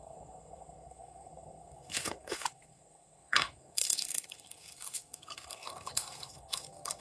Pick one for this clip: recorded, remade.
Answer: remade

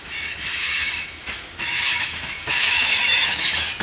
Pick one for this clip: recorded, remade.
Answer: remade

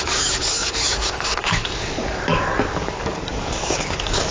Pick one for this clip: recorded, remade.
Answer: remade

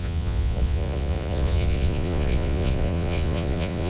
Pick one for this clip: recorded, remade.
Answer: remade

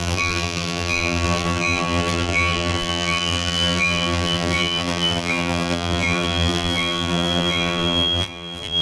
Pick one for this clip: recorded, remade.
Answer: remade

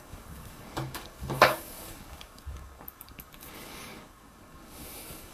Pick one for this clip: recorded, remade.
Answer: remade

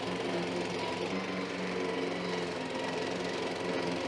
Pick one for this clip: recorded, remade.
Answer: recorded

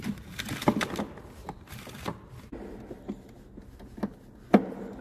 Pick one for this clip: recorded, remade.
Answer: recorded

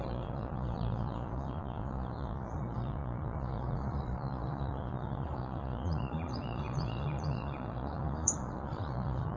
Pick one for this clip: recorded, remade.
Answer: remade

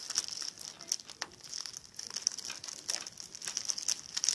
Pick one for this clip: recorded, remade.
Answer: recorded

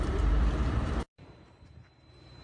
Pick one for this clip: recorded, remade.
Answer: remade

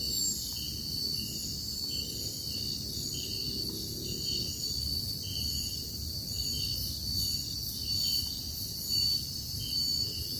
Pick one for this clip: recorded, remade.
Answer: recorded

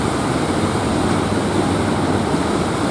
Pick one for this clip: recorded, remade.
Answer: recorded